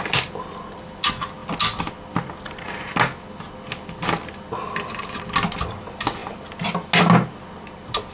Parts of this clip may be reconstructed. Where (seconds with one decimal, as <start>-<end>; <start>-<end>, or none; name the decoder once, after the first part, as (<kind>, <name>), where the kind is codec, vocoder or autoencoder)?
none